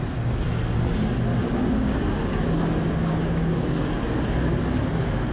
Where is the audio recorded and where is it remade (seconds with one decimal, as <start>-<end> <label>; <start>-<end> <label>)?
0.0-1.4 recorded; 1.4-4.6 remade; 4.6-5.3 recorded